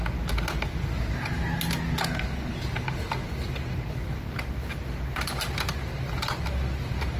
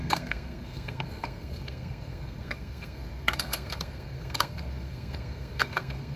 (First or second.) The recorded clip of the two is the first